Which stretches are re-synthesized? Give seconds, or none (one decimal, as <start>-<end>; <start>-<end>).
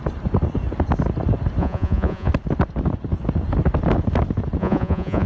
1.6-2.3; 4.6-5.3